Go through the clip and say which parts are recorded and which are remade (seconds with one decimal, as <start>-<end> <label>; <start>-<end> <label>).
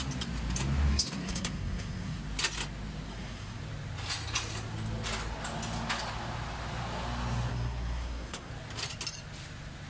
0.0-0.9 recorded; 0.9-2.2 remade; 2.2-3.1 recorded; 3.1-3.6 remade; 3.6-7.5 recorded; 7.5-8.5 remade; 8.5-9.9 recorded